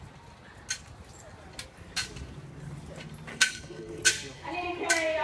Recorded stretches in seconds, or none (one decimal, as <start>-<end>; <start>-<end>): 0.0-3.3; 4.0-5.2